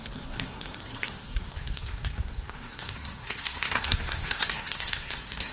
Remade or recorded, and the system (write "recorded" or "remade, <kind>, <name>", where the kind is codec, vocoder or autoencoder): remade, codec, SNAC